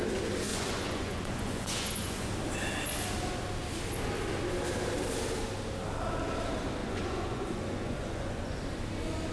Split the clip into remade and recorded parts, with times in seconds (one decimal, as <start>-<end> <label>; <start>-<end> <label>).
0.0-0.5 recorded; 0.5-2.3 remade; 2.3-6.8 recorded; 6.8-8.6 remade; 8.6-9.3 recorded